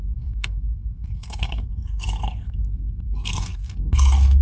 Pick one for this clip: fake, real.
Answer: fake